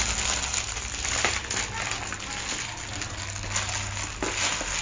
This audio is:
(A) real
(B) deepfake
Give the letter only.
A